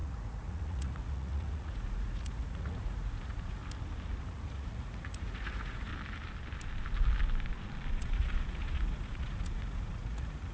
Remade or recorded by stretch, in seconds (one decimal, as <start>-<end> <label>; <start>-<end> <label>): 0.0-3.6 remade; 3.6-4.2 recorded; 4.2-5.9 remade; 5.9-8.0 recorded; 8.0-10.5 remade